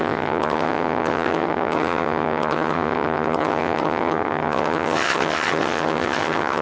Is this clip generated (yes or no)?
yes